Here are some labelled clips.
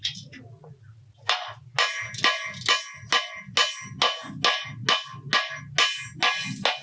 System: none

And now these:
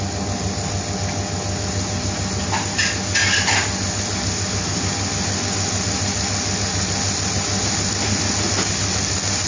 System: none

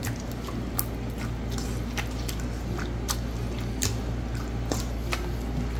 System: none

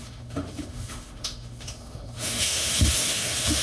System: autoencoder, DAC-VAE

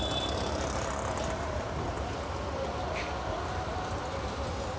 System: none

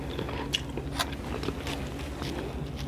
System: none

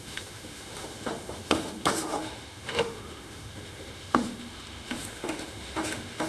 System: autoencoder, DAC-VAE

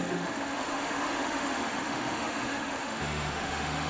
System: autoencoder, DAC-VAE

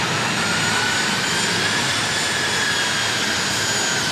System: none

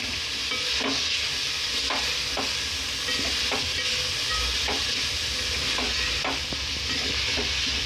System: none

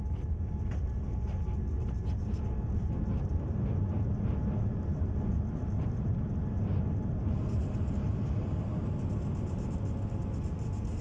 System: none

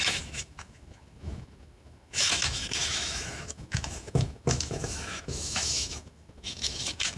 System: autoencoder, DAC-VAE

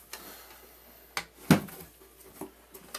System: none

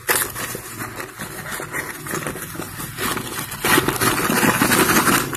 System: none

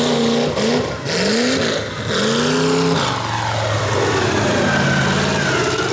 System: none